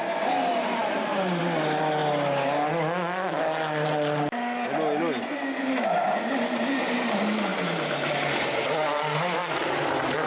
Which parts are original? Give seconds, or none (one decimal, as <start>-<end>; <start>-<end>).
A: 0.0-10.3